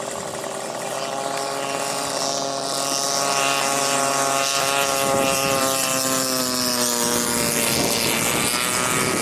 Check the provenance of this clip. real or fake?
real